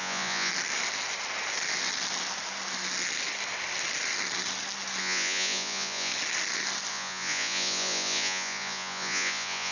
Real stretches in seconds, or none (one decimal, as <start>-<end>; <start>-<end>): 0.5-5.0; 6.1-6.9